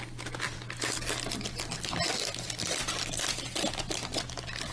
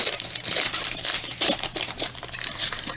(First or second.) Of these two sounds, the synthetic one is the second